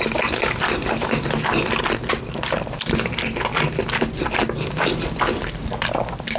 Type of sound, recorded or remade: recorded